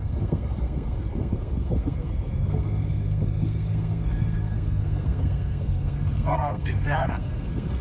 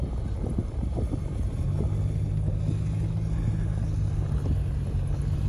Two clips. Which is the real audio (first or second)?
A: second